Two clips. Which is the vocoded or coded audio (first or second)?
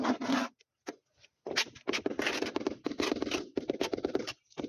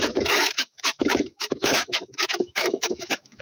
second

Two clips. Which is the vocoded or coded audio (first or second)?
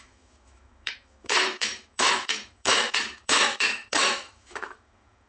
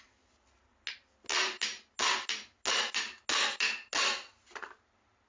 first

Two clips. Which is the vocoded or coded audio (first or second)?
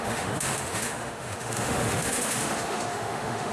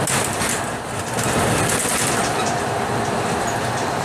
first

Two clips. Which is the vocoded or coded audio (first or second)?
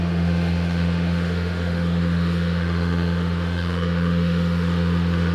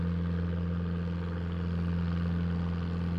first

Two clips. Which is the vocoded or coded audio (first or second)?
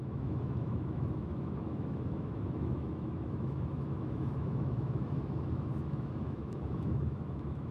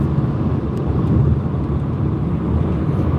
first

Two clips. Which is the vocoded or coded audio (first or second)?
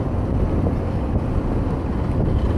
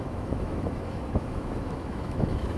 second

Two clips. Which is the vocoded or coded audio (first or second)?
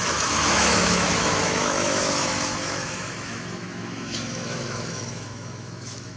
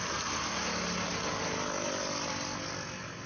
first